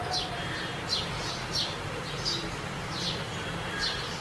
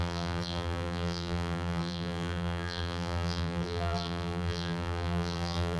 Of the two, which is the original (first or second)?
first